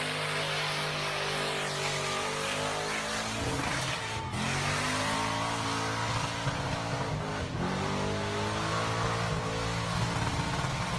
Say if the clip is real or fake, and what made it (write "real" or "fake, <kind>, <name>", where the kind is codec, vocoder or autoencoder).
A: real